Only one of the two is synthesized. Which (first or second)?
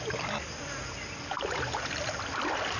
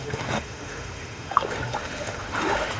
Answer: second